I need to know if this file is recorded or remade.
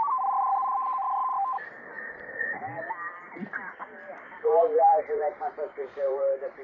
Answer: remade